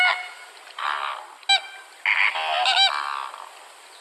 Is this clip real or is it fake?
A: real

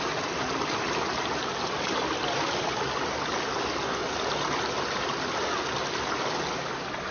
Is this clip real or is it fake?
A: real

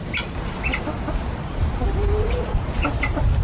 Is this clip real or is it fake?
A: real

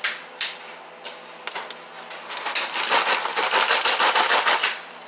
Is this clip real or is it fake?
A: real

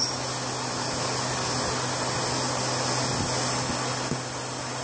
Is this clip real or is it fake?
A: real